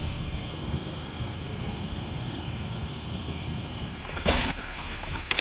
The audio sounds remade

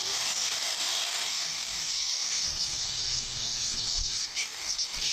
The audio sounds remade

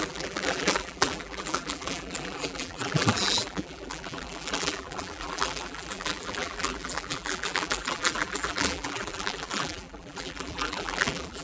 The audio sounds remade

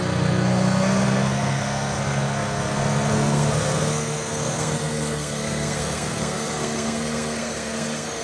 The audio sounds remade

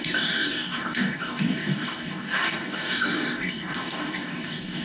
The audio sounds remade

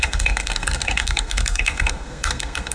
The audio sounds remade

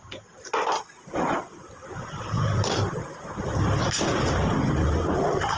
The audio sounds recorded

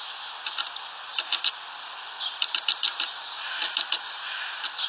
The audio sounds recorded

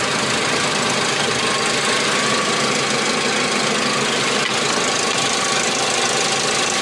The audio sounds recorded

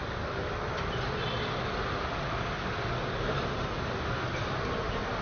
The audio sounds recorded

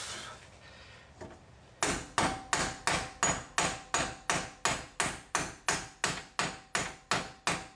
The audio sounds recorded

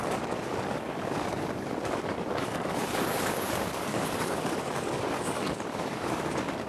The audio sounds remade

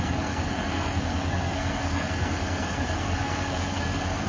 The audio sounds remade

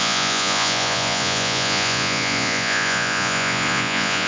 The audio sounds remade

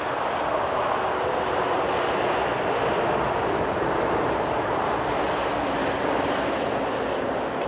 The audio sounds recorded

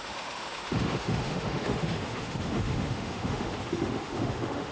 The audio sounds remade